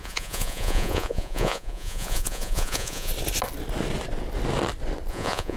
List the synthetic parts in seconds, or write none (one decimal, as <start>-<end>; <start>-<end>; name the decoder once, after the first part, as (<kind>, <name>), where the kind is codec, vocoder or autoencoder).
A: 0.0-3.1 (vocoder, Vocos); 5.1-5.6